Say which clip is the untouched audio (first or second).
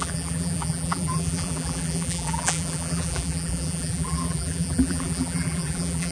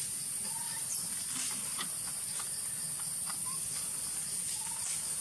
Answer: second